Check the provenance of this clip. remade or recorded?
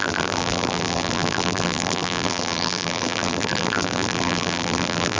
remade